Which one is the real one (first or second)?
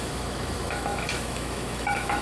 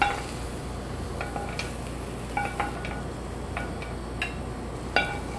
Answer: second